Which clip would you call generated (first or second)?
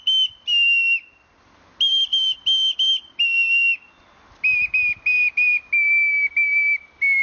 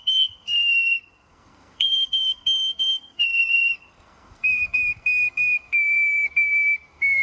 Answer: second